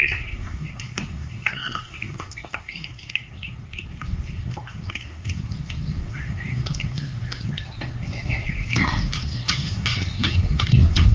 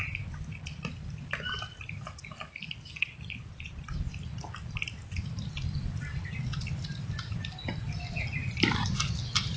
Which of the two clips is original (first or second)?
second